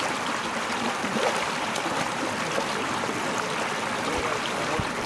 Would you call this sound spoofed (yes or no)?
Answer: yes